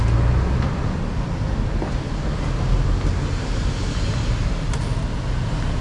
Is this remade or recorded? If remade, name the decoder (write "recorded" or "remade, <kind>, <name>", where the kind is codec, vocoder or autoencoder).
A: recorded